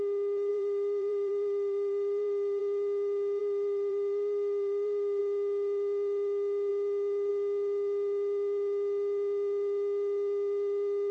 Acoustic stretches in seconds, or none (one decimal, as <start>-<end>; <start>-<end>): 0.0-0.5; 2.6-3.4; 5.2-11.1